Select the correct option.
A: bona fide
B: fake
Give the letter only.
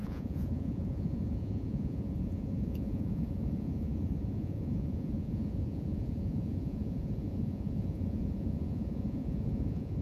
B